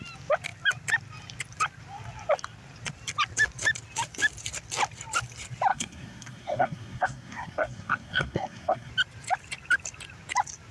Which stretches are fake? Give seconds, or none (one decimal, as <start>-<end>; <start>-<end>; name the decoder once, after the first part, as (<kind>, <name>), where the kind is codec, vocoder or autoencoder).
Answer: 5.7-8.9 (codec, SNAC)